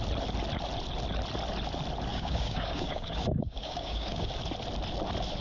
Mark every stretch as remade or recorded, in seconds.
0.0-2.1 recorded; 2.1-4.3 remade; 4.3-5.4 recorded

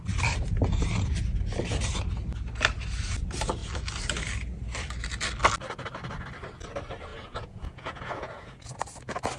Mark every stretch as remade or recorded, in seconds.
0.0-7.1 recorded; 7.1-8.7 remade; 8.7-9.4 recorded

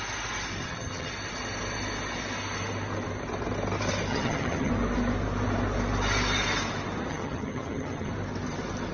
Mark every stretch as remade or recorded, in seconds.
0.0-0.6 recorded; 0.6-1.1 remade; 1.1-4.1 recorded; 4.1-4.7 remade; 4.7-7.1 recorded; 7.1-8.1 remade; 8.1-8.9 recorded

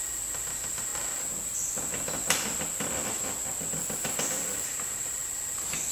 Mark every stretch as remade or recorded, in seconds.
0.0-0.9 remade; 0.9-3.7 recorded; 3.7-5.2 remade; 5.2-5.9 recorded

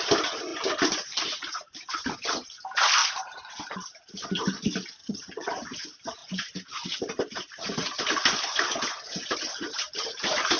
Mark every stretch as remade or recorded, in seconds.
0.0-5.0 recorded; 5.0-5.5 remade; 5.5-10.6 recorded

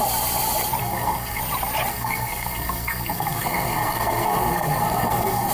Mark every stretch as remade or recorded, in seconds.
0.0-0.8 recorded; 0.8-1.4 remade; 1.4-1.9 recorded; 1.9-5.5 remade